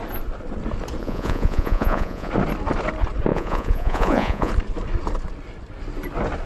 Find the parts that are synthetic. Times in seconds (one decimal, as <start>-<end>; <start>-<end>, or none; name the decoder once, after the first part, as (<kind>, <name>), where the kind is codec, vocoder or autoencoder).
1.0-2.3 (vocoder, Vocos); 3.3-4.5